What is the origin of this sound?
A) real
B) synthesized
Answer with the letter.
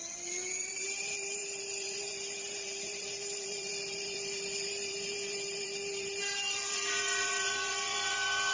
B